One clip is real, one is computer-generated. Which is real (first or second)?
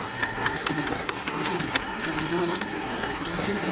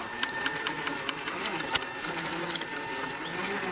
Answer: second